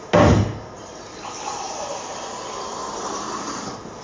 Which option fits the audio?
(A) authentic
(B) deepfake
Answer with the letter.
A